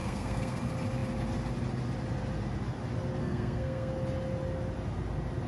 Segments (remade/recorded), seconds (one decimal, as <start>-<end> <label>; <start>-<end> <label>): 0.0-0.6 remade; 0.6-3.2 recorded; 3.2-3.9 remade; 3.9-5.5 recorded